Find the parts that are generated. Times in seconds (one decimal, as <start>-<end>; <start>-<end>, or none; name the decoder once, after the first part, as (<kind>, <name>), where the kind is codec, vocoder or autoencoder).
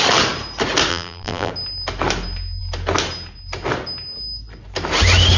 0.9-1.5 (vocoder, BigVGAN v2)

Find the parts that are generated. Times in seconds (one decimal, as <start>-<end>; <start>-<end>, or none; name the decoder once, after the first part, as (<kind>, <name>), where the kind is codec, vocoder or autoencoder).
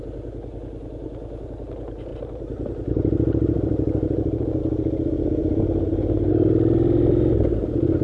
2.1-4.6 (vocoder, BigVGAN v2); 5.4-6.3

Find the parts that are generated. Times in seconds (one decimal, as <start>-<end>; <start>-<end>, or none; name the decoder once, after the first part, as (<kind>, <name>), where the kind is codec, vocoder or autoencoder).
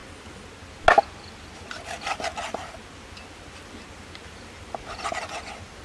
none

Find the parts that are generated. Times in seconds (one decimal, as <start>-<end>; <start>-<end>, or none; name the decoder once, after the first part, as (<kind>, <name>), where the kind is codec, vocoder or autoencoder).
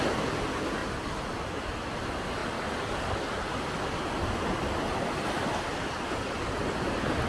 0.8-1.9 (vocoder, BigVGAN v2)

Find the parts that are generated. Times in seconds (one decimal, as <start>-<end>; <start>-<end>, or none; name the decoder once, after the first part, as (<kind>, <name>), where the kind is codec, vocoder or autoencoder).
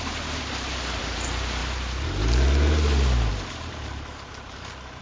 0.0-1.6 (vocoder, BigVGAN v2); 3.3-5.0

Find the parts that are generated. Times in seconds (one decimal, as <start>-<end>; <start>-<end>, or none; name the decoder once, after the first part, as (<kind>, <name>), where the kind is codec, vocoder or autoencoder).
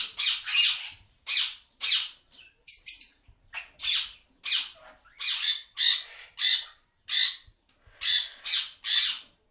0.5-3.5 (vocoder, BigVGAN v2)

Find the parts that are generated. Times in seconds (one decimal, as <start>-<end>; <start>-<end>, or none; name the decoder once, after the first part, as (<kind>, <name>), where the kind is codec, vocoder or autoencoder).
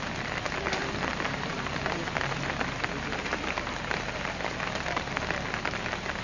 1.1-1.7 (vocoder, BigVGAN v2)